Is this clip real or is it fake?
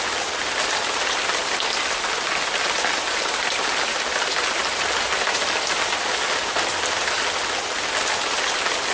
real